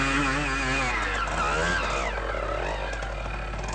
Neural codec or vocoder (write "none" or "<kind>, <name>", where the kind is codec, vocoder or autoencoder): none